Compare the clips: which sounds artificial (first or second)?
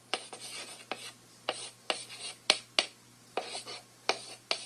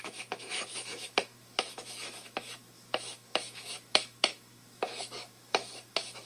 second